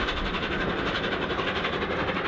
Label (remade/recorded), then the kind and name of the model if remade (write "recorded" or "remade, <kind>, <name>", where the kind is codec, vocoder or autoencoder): recorded